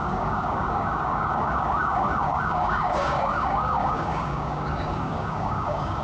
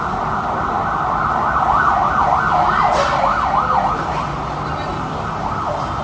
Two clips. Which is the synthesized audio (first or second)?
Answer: first